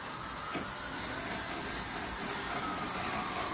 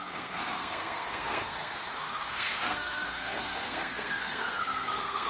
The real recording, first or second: first